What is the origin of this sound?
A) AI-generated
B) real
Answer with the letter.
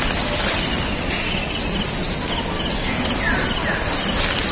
B